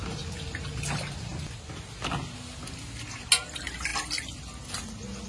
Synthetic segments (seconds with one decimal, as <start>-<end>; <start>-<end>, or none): none